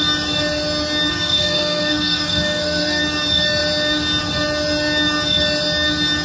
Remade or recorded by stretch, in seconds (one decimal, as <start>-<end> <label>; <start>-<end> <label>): 0.0-1.1 recorded; 1.1-3.0 remade; 3.0-6.2 recorded